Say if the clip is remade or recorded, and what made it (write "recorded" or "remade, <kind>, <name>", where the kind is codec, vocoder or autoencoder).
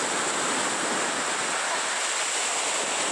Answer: recorded